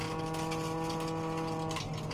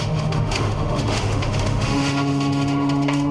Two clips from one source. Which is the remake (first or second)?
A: second